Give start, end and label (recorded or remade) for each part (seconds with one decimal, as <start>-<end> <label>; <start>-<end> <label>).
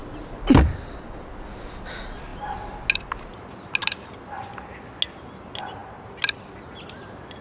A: 0.0-7.4 recorded